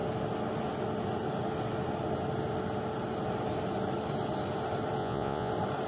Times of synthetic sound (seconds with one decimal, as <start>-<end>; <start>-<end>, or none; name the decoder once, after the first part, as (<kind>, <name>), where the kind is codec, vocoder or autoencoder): 5.0-5.5 (vocoder, Vocos)